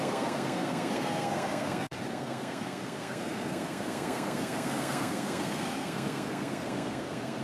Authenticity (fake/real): fake